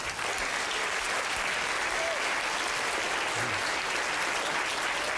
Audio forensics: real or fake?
real